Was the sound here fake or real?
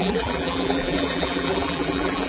fake